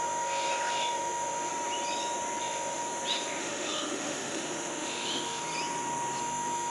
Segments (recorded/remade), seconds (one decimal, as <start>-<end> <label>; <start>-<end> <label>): 0.0-1.5 remade; 1.5-2.4 recorded; 2.4-2.8 remade; 2.8-3.4 recorded; 3.4-5.4 remade; 5.4-6.2 recorded; 6.2-6.7 remade